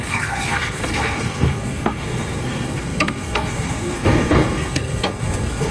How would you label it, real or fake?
fake